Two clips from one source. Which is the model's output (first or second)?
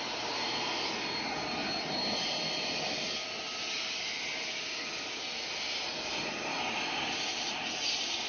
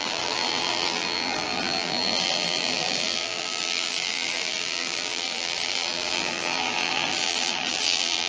second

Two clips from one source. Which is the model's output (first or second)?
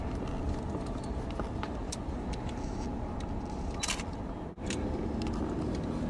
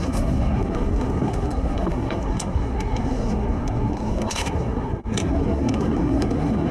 second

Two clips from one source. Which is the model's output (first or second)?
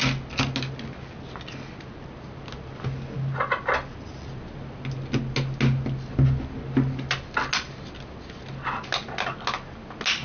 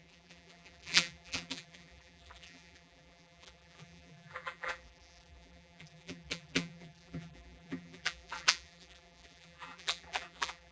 second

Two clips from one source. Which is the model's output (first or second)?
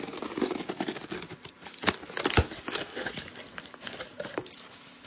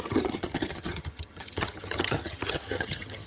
second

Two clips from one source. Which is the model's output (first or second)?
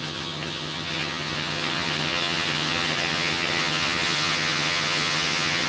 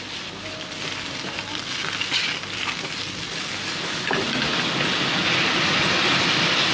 first